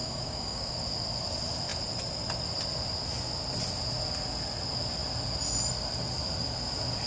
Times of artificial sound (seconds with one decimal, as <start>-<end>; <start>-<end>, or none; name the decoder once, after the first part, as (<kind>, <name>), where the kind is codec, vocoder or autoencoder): 0.0-0.7 (codec, DAC)